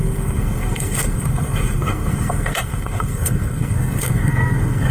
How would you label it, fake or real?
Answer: fake